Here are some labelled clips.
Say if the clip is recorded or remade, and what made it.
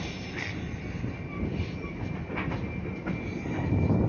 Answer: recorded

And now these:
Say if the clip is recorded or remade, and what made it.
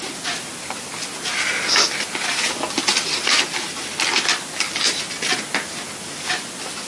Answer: recorded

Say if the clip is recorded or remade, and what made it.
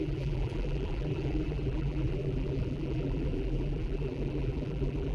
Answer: remade, vocoder, BigVGAN v2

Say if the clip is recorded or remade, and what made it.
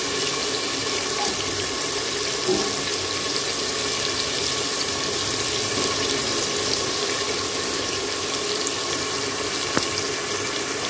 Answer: recorded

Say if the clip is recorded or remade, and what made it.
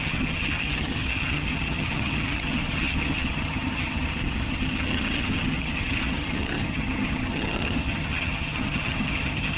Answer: remade, vocoder, HiFi-GAN